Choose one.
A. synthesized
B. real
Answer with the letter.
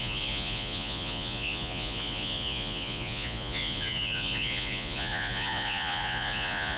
A